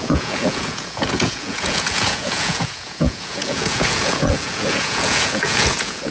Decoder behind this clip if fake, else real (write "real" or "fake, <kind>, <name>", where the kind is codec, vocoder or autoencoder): fake, vocoder, Vocos